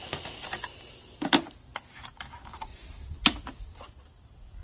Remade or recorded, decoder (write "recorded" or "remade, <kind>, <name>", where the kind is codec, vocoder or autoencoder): recorded